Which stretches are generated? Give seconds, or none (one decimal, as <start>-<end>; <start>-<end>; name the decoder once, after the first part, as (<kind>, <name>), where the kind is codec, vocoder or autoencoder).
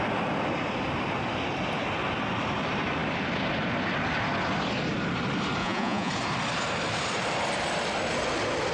5.6-6.1 (vocoder, Vocos)